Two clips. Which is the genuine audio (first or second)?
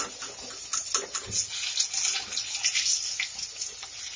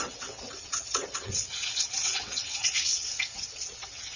first